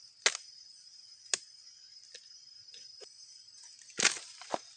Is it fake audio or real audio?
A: real